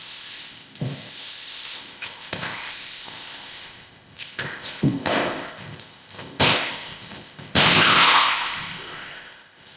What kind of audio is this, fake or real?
fake